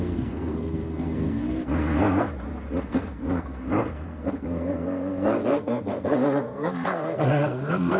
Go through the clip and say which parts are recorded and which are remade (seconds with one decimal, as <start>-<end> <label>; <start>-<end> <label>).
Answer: 0.0-2.3 remade; 2.3-2.8 recorded; 2.8-8.0 remade